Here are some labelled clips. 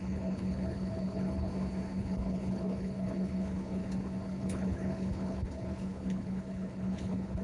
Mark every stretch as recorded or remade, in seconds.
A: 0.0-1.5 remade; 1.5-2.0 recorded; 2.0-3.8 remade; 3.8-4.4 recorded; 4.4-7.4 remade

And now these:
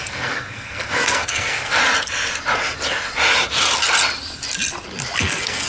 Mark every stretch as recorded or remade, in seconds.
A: 0.0-1.8 remade; 1.8-5.2 recorded; 5.2-5.7 remade

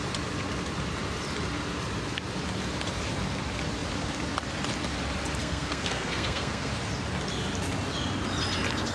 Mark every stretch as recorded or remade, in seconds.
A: 0.0-5.4 recorded; 5.4-6.7 remade; 6.7-8.9 recorded

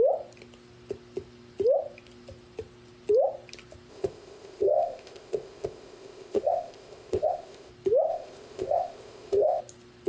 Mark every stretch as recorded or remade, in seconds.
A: 0.0-3.9 recorded; 3.9-7.7 remade; 7.7-8.1 recorded; 8.1-9.6 remade; 9.6-10.1 recorded

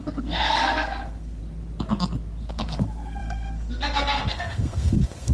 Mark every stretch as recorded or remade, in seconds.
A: 0.0-1.4 remade; 1.4-2.4 recorded; 2.4-5.3 remade

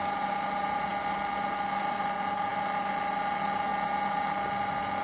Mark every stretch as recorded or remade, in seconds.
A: 0.0-5.0 recorded

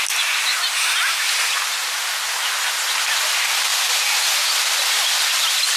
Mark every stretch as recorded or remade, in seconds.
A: 0.0-5.8 recorded